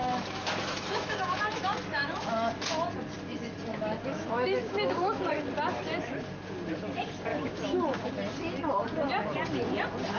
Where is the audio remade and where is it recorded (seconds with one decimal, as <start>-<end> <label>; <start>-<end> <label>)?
0.0-2.3 remade; 2.3-3.7 recorded; 3.7-5.3 remade; 5.3-7.3 recorded; 7.3-8.1 remade; 8.1-10.2 recorded